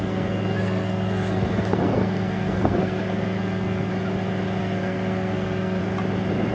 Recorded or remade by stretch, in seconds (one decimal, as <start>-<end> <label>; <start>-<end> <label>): 0.0-3.9 remade; 3.9-4.6 recorded; 4.6-5.8 remade; 5.8-6.5 recorded